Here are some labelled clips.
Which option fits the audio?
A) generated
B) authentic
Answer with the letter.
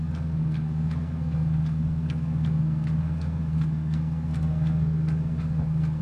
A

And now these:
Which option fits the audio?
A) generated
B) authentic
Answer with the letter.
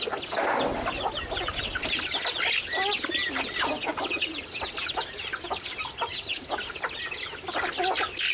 B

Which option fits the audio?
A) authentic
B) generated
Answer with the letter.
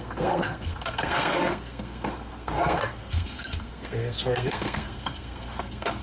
B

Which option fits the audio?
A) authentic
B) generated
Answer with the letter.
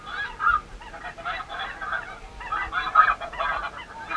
A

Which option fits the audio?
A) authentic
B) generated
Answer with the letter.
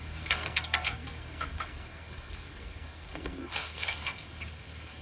B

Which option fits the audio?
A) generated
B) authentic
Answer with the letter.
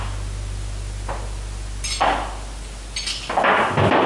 B